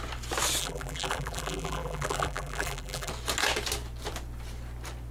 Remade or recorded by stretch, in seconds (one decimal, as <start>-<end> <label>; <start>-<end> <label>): 0.0-0.6 recorded; 0.6-3.1 remade; 3.1-5.1 recorded